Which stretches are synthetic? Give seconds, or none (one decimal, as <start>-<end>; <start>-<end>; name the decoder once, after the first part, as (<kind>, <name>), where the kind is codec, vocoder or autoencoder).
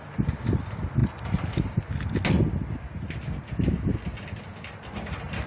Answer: none